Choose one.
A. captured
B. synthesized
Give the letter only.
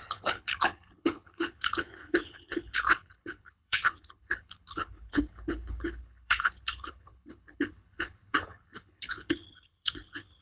B